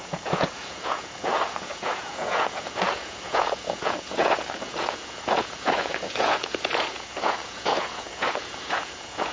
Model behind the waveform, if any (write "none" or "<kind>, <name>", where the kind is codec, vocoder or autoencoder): vocoder, Vocos